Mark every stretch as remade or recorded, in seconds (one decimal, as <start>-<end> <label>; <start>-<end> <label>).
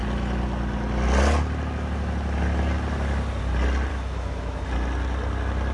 0.0-3.9 recorded; 3.9-4.7 remade; 4.7-5.7 recorded